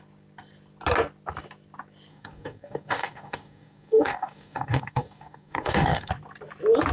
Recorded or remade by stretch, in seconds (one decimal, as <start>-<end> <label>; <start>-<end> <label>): 0.0-2.1 recorded; 2.1-6.1 remade; 6.1-6.9 recorded